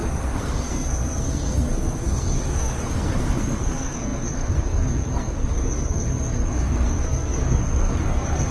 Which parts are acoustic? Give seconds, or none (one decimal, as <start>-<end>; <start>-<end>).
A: none